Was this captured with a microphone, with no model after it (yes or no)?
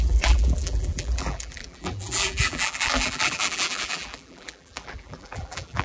no